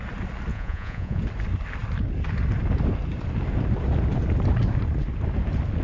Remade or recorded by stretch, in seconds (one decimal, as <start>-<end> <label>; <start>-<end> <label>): 0.0-0.5 recorded; 0.5-1.2 remade; 1.2-5.8 recorded